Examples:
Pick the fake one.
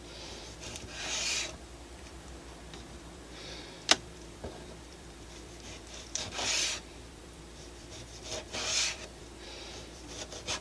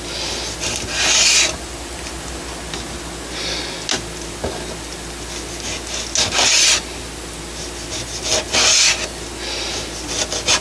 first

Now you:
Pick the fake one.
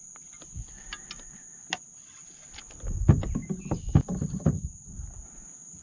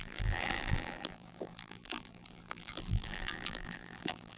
second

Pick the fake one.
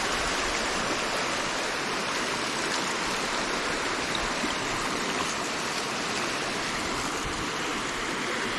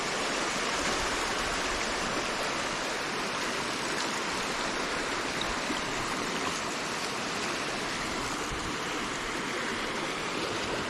second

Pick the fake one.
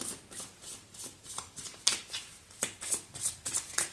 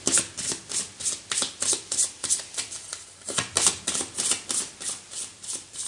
first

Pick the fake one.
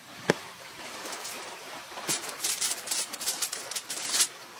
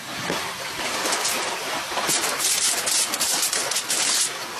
first